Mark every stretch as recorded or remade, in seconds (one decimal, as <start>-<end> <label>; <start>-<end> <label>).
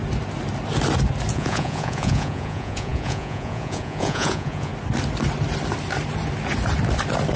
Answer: 0.0-1.3 recorded; 1.3-4.7 remade; 4.7-7.4 recorded